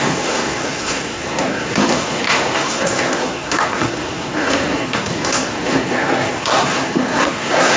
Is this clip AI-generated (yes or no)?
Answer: yes